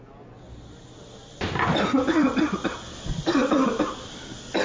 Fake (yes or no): no